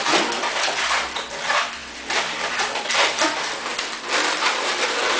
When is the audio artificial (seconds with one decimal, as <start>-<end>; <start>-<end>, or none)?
1.8-2.9; 3.7-4.7